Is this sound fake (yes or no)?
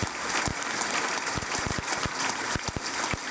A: no